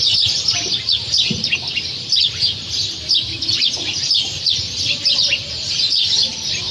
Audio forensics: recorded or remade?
recorded